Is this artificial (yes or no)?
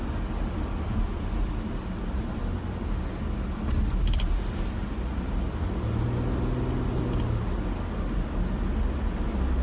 no